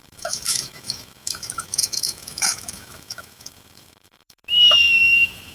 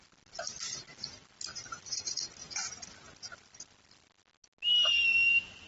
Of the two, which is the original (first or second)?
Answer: second